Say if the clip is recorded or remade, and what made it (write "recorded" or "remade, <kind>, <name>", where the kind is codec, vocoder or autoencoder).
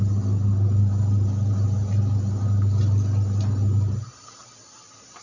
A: recorded